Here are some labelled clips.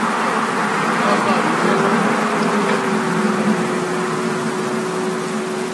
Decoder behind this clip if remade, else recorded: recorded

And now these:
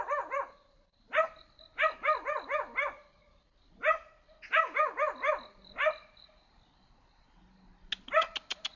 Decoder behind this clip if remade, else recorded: recorded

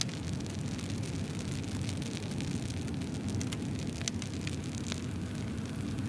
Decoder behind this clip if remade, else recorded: recorded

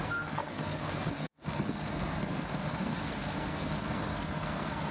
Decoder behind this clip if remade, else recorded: remade, codec, SNAC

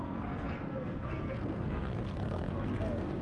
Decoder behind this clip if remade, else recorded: remade, codec, SNAC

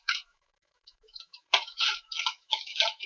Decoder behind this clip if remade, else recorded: remade, autoencoder, DAC-VAE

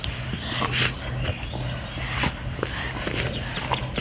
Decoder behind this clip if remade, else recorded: recorded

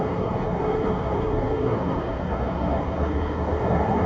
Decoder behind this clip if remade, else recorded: remade, codec, SNAC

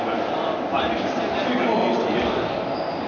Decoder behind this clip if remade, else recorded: recorded